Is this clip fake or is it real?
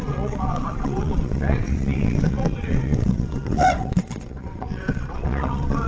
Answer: fake